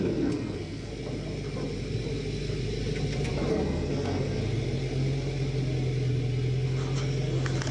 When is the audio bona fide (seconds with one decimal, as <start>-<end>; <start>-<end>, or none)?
0.9-3.5; 4.4-7.7

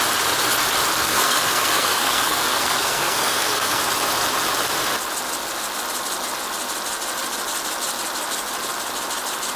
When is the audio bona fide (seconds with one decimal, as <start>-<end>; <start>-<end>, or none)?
0.0-1.0; 3.8-9.6

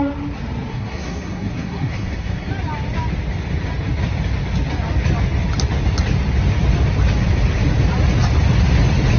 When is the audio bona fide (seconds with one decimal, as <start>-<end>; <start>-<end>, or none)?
0.0-0.7; 2.5-9.2

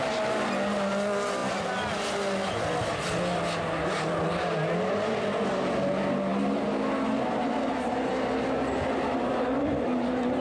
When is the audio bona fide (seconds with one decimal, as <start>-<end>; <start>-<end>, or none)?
0.0-10.4

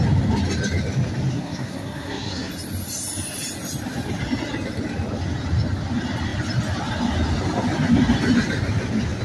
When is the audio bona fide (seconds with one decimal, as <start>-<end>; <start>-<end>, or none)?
0.0-1.3; 2.5-9.2

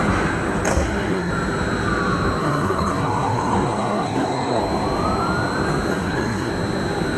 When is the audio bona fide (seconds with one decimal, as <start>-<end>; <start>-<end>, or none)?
0.0-0.7; 1.3-2.4; 4.6-5.9; 6.5-7.2